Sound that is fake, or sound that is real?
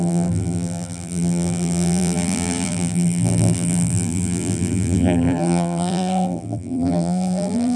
fake